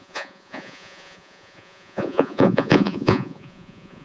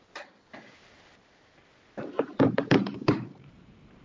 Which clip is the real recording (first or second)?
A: second